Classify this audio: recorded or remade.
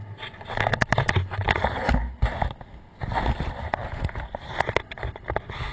recorded